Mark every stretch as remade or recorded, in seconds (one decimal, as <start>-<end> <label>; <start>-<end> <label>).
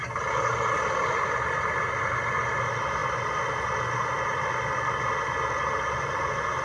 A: 0.0-6.6 recorded